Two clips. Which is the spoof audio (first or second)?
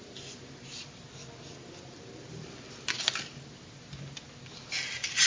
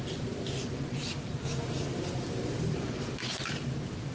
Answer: second